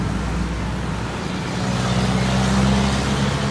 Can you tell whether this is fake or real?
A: real